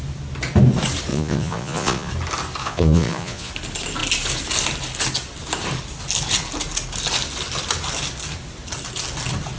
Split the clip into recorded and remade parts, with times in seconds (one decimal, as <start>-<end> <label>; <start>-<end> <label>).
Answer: 0.0-1.1 recorded; 1.1-2.1 remade; 2.1-2.6 recorded; 2.6-3.5 remade; 3.5-9.6 recorded